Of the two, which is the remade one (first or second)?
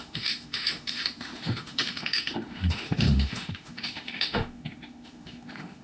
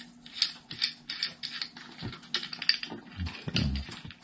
first